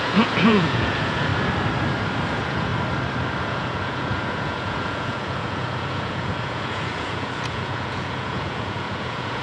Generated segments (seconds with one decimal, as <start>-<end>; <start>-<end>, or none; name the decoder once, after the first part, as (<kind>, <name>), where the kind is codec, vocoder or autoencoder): 0.0-1.3 (vocoder, Vocos); 2.3-2.7; 3.4-9.4